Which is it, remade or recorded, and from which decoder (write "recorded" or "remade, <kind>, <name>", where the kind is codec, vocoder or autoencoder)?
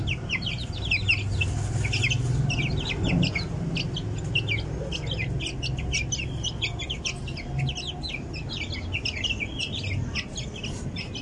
recorded